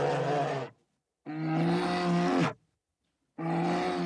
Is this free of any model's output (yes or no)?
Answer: yes